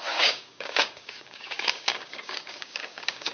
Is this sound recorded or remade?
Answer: remade